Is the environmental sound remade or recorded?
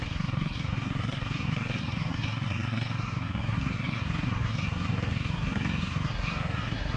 remade